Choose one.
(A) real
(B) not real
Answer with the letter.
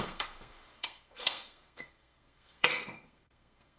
B